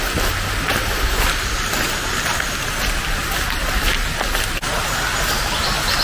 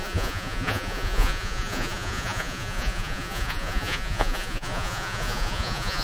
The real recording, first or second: first